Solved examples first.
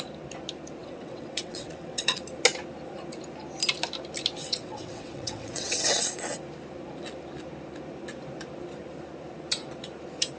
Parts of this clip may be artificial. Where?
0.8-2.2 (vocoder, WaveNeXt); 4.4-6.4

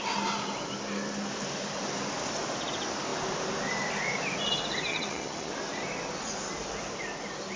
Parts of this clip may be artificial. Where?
4.9-5.5 (vocoder, HiFi-GAN)

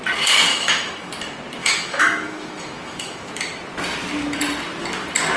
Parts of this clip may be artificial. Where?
0.5-1.1 (autoencoder, DAC-VAE); 1.6-3.3

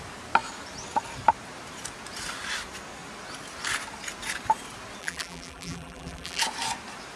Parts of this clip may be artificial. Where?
5.0-6.4 (vocoder, BigVGAN v2)

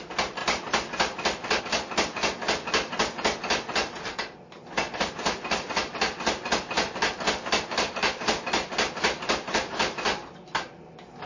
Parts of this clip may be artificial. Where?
none

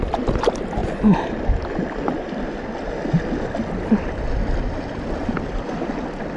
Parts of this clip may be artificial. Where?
none

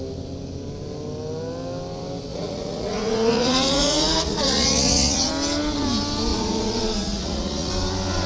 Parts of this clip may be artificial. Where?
2.3-5.3 (vocoder, Vocos); 6.3-7.7